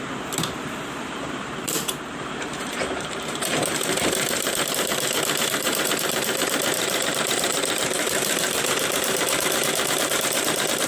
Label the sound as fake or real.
fake